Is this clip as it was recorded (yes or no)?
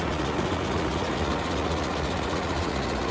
no